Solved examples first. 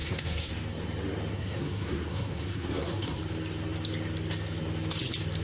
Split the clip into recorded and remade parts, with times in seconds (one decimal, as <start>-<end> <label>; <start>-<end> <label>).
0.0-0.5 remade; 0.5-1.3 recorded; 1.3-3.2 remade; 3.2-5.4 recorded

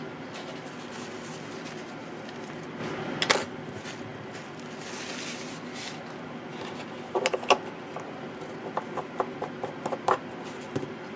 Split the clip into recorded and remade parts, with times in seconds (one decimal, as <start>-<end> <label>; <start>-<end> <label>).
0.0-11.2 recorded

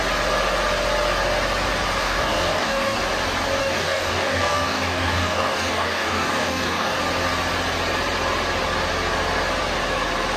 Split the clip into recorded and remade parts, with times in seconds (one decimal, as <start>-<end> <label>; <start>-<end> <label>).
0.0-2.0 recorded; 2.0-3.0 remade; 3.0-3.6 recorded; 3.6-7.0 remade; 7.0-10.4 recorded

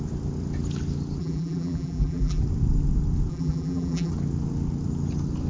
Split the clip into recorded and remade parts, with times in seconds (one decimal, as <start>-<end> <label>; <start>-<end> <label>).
0.0-1.2 recorded; 1.2-2.4 remade; 2.4-3.3 recorded; 3.3-4.1 remade; 4.1-5.5 recorded

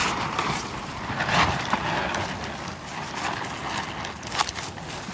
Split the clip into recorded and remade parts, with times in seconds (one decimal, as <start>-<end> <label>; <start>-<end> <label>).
0.0-1.1 remade; 1.1-5.1 recorded